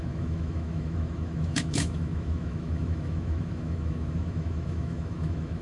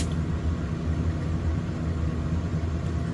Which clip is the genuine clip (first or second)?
second